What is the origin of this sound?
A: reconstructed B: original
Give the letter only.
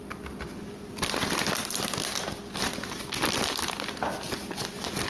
B